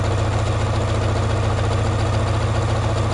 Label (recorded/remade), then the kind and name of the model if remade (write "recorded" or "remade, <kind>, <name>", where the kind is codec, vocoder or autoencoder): recorded